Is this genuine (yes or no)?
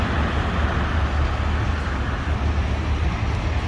yes